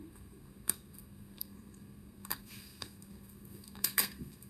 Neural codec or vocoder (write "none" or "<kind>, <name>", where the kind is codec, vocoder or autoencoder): codec, SNAC